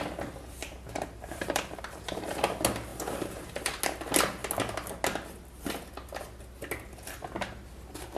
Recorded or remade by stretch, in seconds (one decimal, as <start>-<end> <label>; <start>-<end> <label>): 0.0-0.6 recorded; 0.6-2.3 remade; 2.3-2.9 recorded; 2.9-3.8 remade; 3.8-8.2 recorded